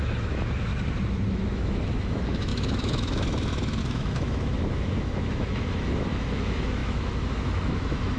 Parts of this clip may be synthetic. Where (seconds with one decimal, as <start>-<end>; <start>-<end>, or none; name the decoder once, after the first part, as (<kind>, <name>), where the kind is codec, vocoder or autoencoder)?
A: 0.0-0.7 (autoencoder, DAC-VAE); 1.3-8.2

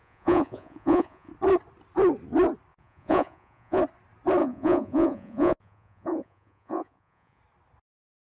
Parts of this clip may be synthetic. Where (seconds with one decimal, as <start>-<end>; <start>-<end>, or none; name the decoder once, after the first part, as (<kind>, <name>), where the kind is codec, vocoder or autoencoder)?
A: 0.0-1.3 (vocoder, Vocos); 2.7-3.8; 4.4-7.4

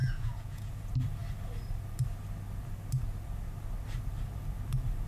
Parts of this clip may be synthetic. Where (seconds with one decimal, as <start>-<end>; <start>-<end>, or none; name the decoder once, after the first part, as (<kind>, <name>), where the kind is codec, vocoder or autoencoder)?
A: 0.0-0.7 (vocoder, Vocos)

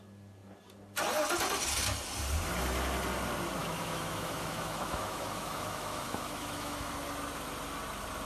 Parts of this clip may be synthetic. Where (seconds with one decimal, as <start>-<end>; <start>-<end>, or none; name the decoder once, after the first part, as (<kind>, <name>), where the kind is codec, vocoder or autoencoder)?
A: 3.6-6.9 (autoencoder, DAC-VAE)